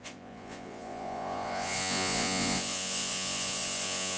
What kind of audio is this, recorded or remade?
remade